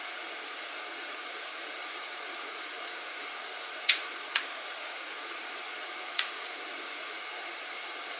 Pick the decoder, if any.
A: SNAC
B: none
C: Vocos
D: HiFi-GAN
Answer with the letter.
C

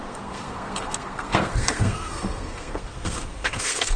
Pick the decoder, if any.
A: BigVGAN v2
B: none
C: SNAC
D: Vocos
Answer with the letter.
C